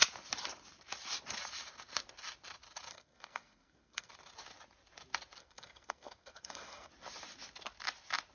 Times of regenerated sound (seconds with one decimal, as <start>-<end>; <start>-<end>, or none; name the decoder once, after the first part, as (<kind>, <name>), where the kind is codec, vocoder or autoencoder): 2.9-4.1 (codec, SNAC); 5.4-6.9